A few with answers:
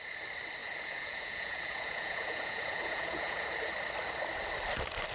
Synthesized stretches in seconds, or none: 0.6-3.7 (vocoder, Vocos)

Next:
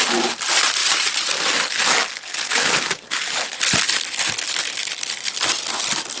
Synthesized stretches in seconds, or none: none

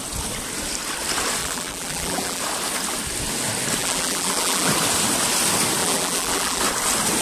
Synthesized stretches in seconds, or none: 1.4-2.4 (vocoder, BigVGAN v2); 3.8-4.7; 5.8-6.6